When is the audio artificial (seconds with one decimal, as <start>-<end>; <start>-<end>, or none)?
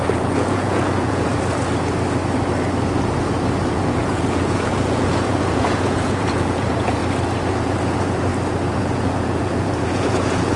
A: 0.0-1.3; 3.7-7.0; 7.5-8.3; 8.8-10.6